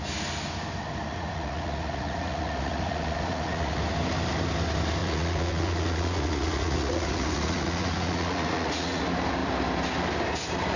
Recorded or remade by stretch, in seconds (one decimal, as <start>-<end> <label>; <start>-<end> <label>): 0.0-1.1 recorded; 1.1-3.8 remade; 3.8-5.0 recorded; 5.0-9.0 remade; 9.0-10.8 recorded